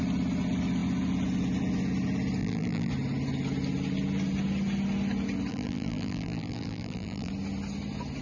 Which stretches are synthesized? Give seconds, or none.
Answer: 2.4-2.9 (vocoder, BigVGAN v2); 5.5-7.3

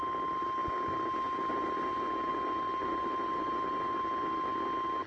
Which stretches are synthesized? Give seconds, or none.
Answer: 2.8-4.0 (vocoder, BigVGAN v2)

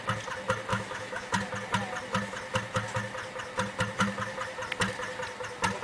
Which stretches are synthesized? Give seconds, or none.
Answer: 0.7-1.3 (autoencoder, DAC-VAE)

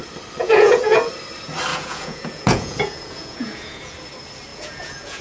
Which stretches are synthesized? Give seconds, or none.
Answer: 0.4-1.1 (vocoder, Vocos); 1.7-3.9; 4.5-5.2

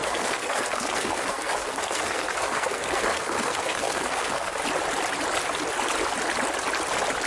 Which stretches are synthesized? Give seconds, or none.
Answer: 0.0-4.6 (codec, SNAC)